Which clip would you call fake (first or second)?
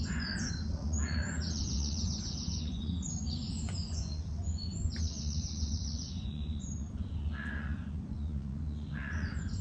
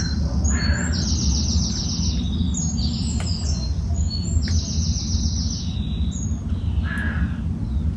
first